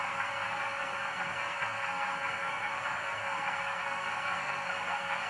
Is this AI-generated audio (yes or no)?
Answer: yes